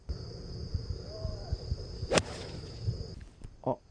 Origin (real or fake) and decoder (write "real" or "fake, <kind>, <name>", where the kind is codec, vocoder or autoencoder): real